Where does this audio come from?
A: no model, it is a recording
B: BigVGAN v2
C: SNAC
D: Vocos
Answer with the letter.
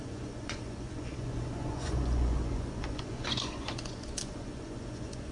D